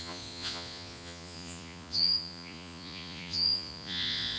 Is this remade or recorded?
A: remade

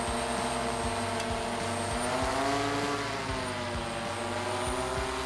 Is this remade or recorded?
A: recorded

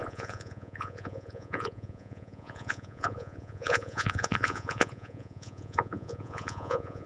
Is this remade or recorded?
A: remade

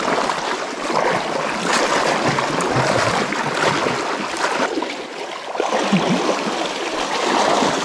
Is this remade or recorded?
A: recorded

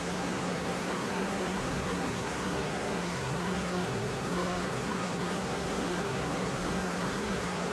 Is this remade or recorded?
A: remade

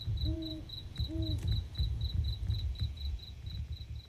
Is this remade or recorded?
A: remade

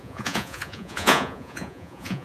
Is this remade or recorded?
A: remade